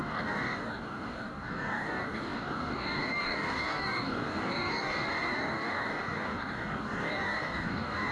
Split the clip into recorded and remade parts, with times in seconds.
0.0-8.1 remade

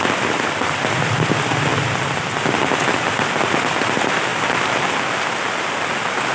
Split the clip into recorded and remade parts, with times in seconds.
0.0-6.3 recorded